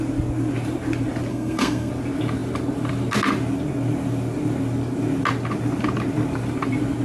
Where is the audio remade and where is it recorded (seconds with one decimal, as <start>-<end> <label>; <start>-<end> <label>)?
0.0-1.3 recorded; 1.3-1.9 remade; 1.9-7.0 recorded